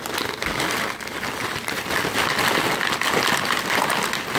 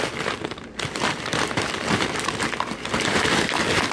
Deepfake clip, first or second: second